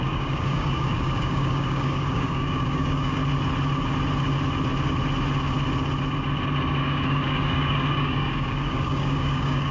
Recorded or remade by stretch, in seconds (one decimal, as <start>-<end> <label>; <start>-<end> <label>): 0.0-3.2 remade; 3.2-6.8 recorded; 6.8-9.7 remade